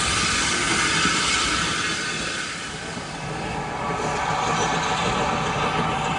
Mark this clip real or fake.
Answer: real